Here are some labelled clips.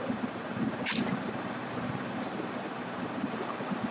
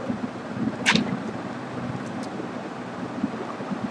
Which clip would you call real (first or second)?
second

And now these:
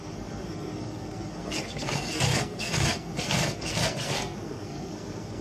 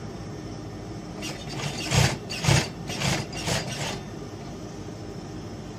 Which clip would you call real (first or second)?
second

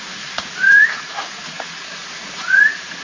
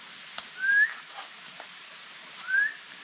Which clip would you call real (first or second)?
second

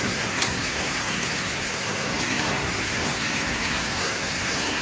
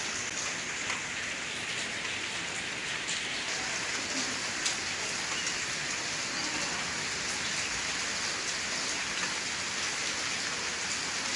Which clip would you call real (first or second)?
second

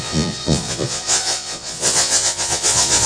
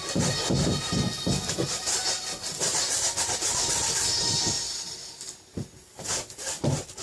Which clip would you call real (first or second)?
second